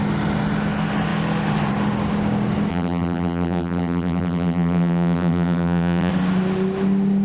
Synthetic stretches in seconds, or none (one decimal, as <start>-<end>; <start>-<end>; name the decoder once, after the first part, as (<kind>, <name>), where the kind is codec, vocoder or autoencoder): 2.7-6.1 (vocoder, BigVGAN v2)